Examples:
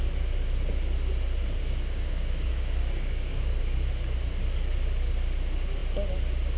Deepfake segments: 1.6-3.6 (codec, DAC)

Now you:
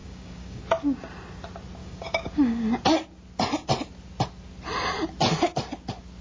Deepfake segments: 0.0-0.6 (codec, DAC); 1.8-2.6

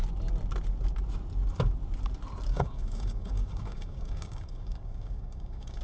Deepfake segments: 2.5-5.8 (codec, DAC)

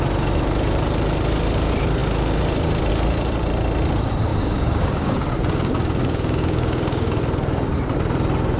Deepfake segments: 4.3-7.2 (codec, DAC)

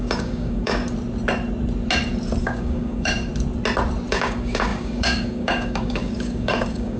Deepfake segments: 0.0-0.8 (codec, DAC); 2.4-3.3; 4.1-7.0